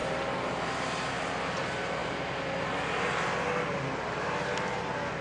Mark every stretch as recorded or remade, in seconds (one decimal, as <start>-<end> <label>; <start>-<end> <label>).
0.0-5.2 recorded